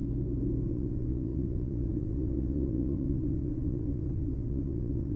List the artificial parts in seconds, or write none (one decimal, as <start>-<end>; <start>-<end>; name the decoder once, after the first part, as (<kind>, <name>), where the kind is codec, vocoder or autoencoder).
0.7-5.2 (vocoder, WaveNeXt)